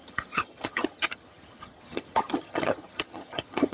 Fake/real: fake